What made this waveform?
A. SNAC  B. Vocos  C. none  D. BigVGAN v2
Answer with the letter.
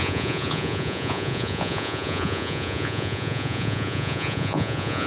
B